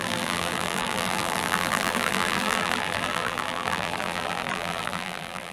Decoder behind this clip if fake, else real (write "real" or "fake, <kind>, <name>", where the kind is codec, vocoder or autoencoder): fake, vocoder, BigVGAN v2